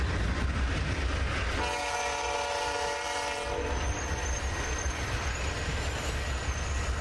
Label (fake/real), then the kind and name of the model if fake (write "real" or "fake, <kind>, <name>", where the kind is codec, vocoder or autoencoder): real